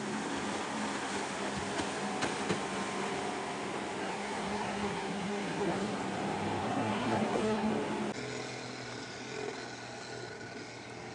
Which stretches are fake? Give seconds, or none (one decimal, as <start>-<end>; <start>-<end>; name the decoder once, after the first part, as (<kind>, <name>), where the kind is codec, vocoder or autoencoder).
4.0-6.0 (codec, SNAC); 6.6-7.7